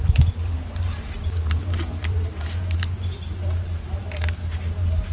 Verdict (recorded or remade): remade